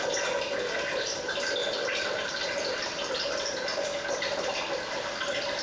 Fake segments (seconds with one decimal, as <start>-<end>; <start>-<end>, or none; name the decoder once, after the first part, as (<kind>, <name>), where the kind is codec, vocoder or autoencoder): none